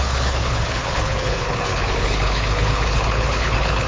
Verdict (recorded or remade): remade